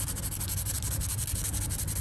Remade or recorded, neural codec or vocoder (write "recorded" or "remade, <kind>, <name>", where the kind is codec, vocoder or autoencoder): recorded